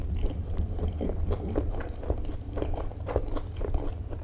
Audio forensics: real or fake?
real